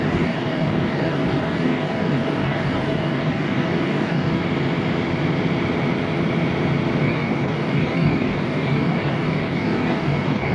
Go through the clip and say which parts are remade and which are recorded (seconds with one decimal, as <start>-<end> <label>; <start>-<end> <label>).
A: 0.0-4.4 remade; 4.4-7.0 recorded; 7.0-10.5 remade